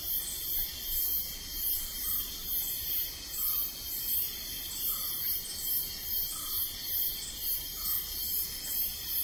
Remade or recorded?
recorded